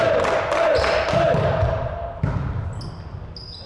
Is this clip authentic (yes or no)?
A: yes